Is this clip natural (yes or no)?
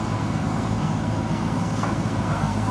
no